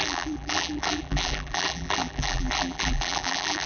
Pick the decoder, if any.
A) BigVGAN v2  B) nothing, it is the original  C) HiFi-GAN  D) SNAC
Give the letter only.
A